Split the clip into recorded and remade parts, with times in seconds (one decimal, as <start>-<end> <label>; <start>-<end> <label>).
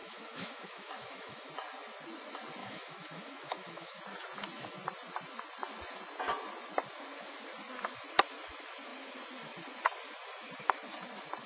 0.0-1.5 remade; 1.5-2.6 recorded; 2.6-4.0 remade; 4.0-11.5 recorded